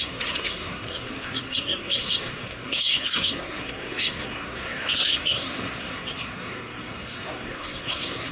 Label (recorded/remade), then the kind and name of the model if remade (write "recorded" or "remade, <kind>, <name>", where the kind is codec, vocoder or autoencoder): remade, codec, SNAC